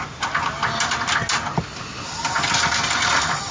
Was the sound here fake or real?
real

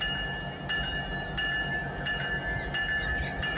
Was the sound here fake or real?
real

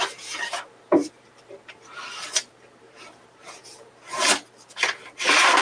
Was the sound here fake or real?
fake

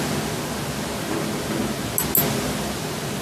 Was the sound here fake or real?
real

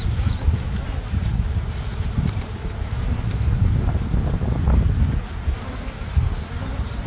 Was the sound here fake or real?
fake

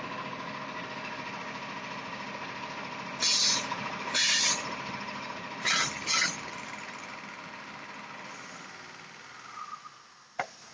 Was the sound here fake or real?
real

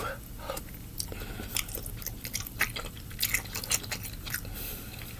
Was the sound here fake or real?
real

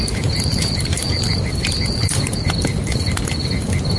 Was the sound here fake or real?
fake